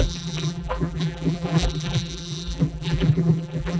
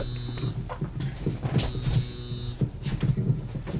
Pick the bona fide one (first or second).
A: second